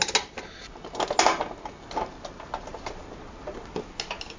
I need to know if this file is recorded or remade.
recorded